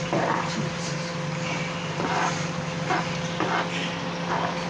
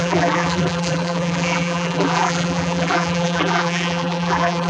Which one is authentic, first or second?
first